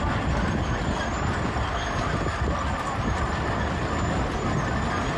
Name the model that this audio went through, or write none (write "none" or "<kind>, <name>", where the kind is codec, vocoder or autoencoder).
none